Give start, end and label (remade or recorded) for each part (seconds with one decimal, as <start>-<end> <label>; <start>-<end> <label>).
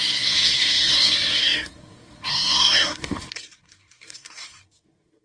0.0-5.2 remade